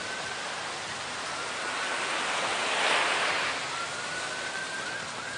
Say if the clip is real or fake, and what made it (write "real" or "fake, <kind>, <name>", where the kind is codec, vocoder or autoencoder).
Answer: real